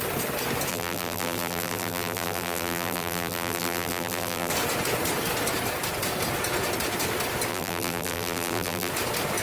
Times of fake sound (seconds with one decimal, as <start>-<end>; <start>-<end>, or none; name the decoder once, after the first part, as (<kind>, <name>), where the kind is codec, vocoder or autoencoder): 0.7-4.5 (vocoder, BigVGAN v2); 7.5-8.9